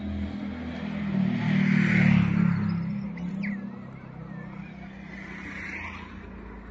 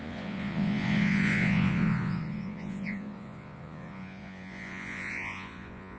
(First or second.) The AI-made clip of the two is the second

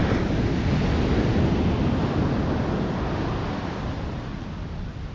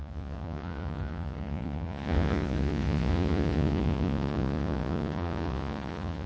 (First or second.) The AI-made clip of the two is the second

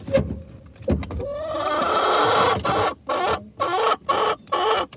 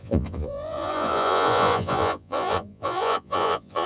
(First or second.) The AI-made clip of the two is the second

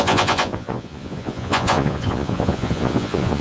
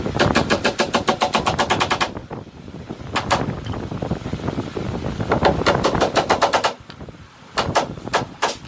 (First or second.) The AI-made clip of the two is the first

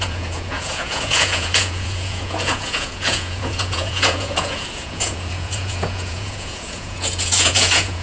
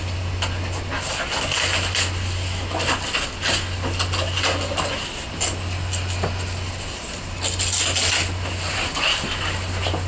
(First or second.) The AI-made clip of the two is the first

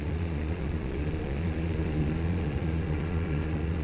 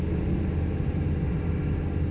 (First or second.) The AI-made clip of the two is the first